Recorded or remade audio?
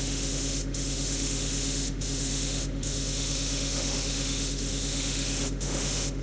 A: remade